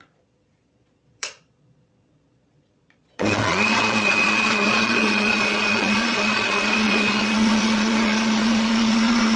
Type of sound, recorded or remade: remade